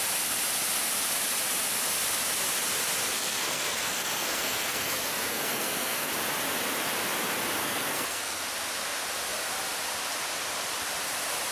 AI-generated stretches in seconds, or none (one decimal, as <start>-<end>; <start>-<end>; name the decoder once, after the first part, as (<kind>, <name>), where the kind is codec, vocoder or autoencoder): 3.1-6.1 (codec, SNAC); 7.6-8.4